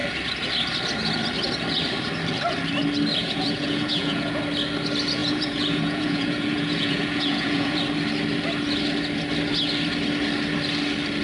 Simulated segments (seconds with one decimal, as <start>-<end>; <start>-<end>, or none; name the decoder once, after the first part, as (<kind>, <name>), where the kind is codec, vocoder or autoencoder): 3.2-4.4 (vocoder, Vocos); 5.2-7.8